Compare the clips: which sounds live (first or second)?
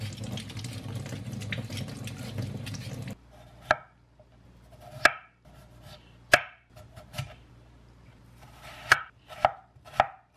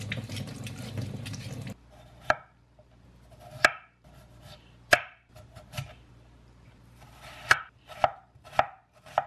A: first